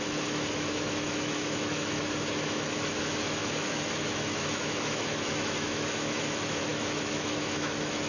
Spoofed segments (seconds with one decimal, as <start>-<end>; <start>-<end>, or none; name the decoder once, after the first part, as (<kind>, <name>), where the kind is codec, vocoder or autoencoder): 0.0-8.1 (autoencoder, DAC-VAE)